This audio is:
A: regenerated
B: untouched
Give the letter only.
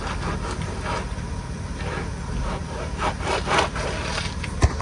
B